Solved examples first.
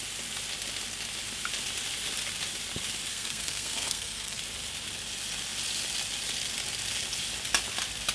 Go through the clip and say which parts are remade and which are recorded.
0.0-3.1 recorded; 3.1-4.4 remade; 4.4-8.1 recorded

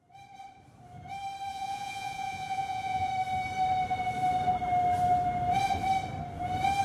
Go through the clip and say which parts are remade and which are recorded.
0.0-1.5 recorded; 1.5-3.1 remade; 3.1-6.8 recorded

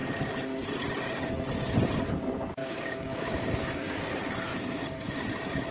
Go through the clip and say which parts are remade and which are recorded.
0.0-2.6 recorded; 2.6-4.0 remade; 4.0-4.5 recorded; 4.5-5.2 remade; 5.2-5.7 recorded

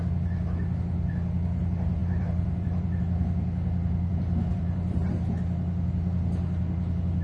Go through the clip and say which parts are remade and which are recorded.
0.0-2.0 recorded; 2.0-3.0 remade; 3.0-4.1 recorded; 4.1-5.1 remade; 5.1-7.2 recorded

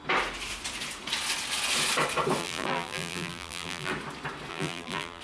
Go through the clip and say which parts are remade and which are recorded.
0.0-2.4 recorded; 2.4-3.9 remade; 3.9-4.5 recorded; 4.5-5.2 remade